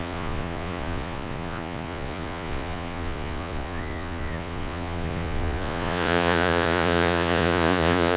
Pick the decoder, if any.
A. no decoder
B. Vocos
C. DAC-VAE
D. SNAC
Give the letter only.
B